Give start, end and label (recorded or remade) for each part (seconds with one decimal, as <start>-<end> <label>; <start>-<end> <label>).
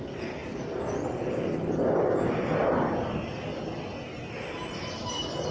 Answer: 0.0-5.5 recorded